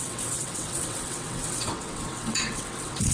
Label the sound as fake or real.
fake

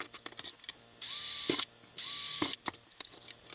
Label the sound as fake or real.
real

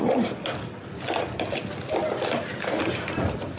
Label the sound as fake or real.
real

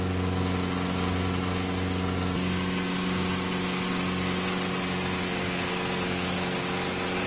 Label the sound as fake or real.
real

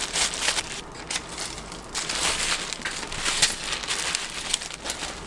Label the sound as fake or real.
real